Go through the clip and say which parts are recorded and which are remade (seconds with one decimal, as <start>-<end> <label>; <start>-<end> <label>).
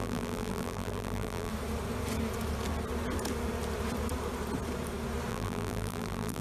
0.0-1.5 remade; 1.5-5.3 recorded; 5.3-6.4 remade